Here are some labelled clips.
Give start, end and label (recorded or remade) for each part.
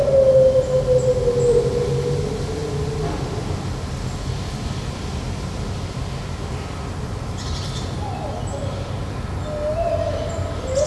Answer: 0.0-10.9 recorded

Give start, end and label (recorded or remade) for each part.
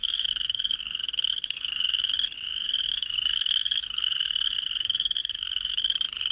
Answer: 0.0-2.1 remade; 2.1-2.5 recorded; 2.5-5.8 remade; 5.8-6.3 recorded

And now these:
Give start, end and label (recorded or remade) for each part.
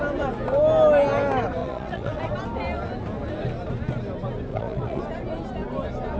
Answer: 0.0-1.6 recorded; 1.6-2.2 remade; 2.2-4.5 recorded; 4.5-5.0 remade; 5.0-6.2 recorded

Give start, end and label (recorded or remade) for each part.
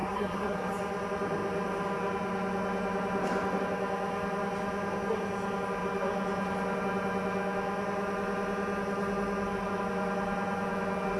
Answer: 0.0-0.7 remade; 0.7-11.2 recorded